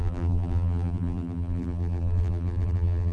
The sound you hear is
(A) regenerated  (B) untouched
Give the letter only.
A